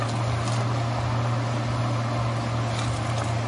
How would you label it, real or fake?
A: real